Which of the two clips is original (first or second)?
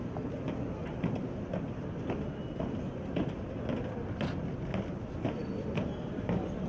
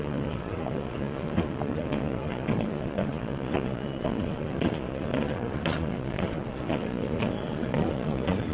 first